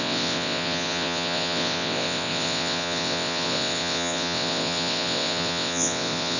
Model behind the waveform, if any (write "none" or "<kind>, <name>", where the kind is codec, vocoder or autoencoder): vocoder, WaveNeXt